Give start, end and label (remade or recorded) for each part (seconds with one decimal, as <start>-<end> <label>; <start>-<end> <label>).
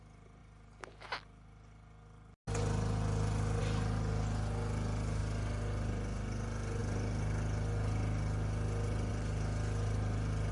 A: 0.0-10.5 recorded